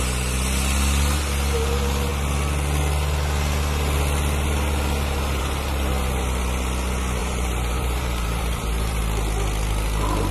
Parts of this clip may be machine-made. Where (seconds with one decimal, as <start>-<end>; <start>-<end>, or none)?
7.2-9.0